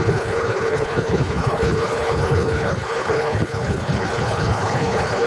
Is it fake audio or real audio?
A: fake